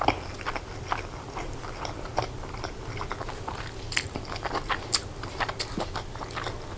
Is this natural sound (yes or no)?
yes